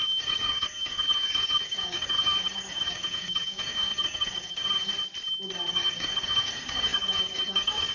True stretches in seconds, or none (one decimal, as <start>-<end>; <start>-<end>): 4.9-5.7